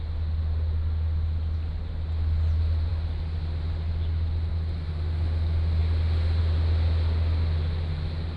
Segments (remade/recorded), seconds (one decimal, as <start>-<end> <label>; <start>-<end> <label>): 0.0-8.4 recorded

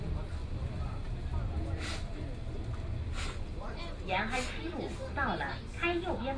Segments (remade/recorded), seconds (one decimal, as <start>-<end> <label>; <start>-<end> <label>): 0.0-1.0 recorded; 1.0-1.9 remade; 1.9-6.4 recorded

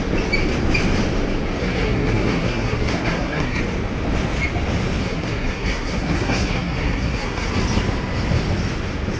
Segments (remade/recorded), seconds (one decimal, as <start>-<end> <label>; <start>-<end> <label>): 0.0-1.6 recorded; 1.6-3.6 remade; 3.6-5.0 recorded; 5.0-7.5 remade; 7.5-9.2 recorded